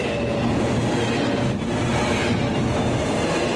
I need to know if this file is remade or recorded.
recorded